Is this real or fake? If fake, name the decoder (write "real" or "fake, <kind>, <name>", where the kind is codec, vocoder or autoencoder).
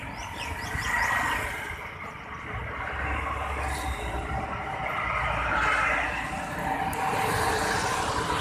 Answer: real